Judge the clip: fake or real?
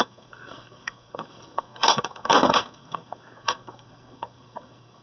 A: fake